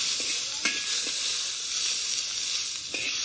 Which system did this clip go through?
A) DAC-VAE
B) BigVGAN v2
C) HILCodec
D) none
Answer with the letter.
D